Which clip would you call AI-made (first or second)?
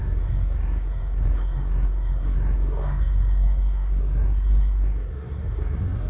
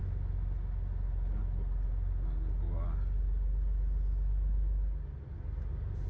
first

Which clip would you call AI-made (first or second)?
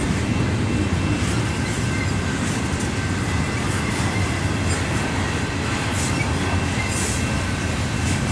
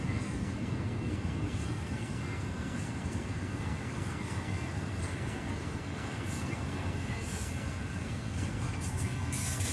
second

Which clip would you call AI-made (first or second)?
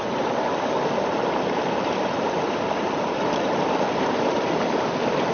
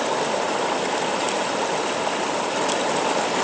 first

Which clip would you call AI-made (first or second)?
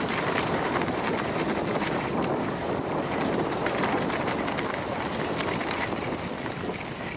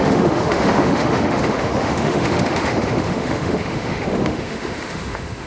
second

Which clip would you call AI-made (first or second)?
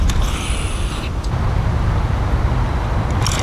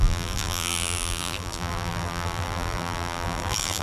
second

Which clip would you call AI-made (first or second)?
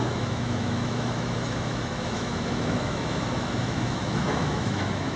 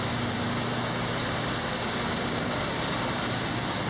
first